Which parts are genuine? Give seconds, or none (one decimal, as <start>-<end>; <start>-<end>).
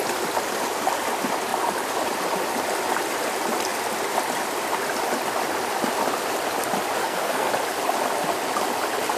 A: 0.0-7.0; 7.5-9.2